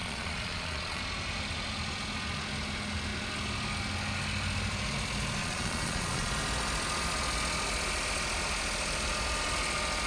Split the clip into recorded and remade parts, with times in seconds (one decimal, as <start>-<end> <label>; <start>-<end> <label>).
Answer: 0.0-1.0 remade; 1.0-5.4 recorded; 5.4-6.3 remade; 6.3-10.1 recorded